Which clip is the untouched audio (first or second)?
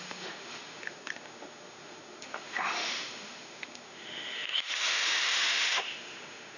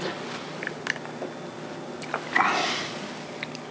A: second